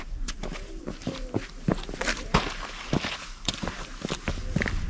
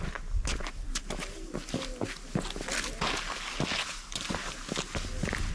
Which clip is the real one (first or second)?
second